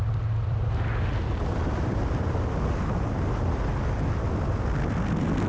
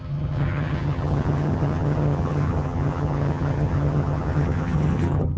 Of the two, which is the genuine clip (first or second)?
first